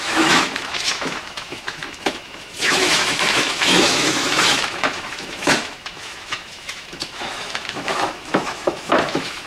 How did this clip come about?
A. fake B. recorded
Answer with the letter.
A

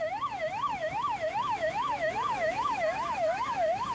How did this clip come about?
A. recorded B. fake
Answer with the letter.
B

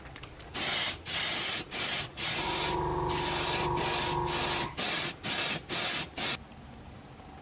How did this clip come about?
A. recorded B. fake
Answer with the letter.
A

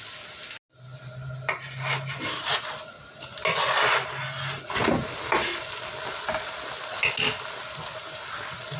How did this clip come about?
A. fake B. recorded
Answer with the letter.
B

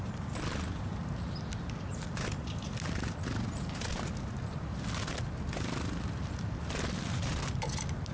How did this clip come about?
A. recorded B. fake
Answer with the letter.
A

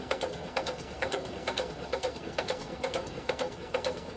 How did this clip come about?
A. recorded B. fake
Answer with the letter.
B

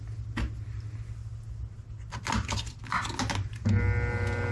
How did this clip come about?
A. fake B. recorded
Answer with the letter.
B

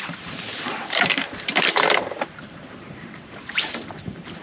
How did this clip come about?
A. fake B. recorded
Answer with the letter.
A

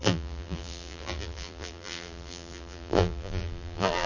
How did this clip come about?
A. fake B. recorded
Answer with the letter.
A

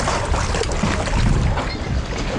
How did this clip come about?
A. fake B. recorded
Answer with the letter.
B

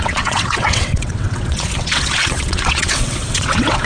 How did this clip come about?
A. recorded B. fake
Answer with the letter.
B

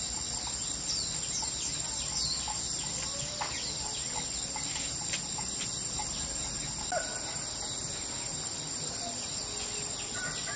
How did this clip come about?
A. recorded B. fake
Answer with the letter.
A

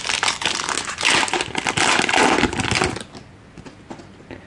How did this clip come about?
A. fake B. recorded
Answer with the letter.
B